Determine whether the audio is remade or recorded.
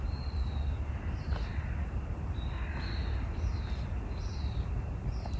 recorded